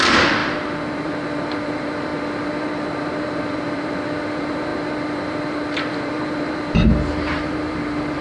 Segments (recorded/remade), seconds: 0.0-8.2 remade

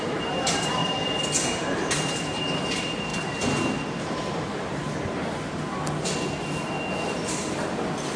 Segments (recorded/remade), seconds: 0.0-0.8 remade; 0.8-1.4 recorded; 1.4-3.1 remade; 3.1-4.0 recorded; 4.0-4.8 remade; 4.8-8.2 recorded

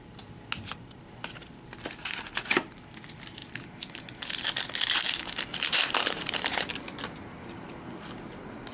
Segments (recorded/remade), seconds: 0.0-5.5 recorded; 5.5-6.7 remade; 6.7-8.7 recorded

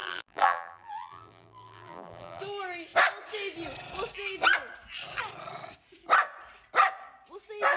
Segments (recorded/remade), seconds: 0.0-2.4 remade; 2.4-7.8 recorded

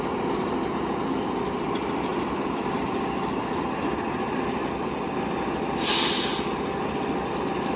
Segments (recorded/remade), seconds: 0.0-2.1 recorded; 2.1-3.5 remade; 3.5-4.6 recorded; 4.6-5.1 remade; 5.1-7.8 recorded